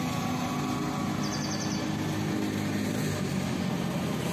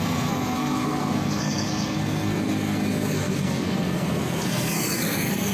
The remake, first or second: second